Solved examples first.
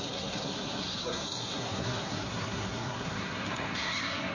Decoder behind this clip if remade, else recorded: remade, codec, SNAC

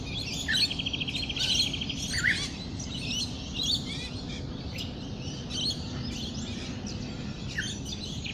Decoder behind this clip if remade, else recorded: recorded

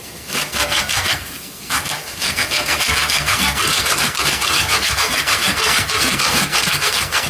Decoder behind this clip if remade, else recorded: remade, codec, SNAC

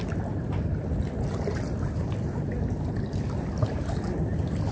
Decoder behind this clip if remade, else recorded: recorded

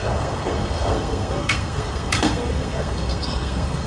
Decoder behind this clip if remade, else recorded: remade, codec, SNAC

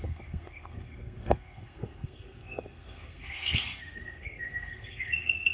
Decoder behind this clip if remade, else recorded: remade, codec, SNAC